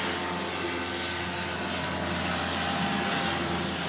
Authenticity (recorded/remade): recorded